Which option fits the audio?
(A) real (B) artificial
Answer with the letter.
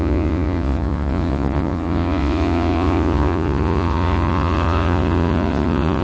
B